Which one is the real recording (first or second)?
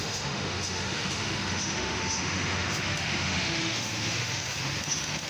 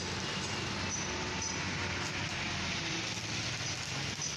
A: second